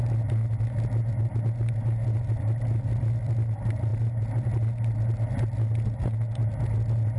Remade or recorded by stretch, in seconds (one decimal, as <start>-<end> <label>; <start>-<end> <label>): 0.0-7.2 recorded